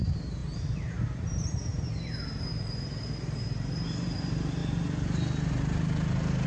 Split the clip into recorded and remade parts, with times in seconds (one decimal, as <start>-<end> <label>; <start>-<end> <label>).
0.0-4.6 remade; 4.6-5.5 recorded; 5.5-6.5 remade

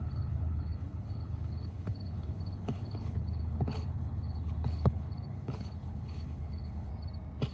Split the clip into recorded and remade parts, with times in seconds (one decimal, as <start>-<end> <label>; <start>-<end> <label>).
0.0-6.9 remade; 6.9-7.5 recorded